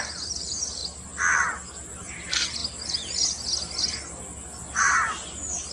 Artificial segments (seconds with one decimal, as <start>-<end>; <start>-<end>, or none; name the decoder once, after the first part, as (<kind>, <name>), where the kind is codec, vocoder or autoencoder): 0.0-0.8 (vocoder, BigVGAN v2); 1.9-2.6; 4.8-5.7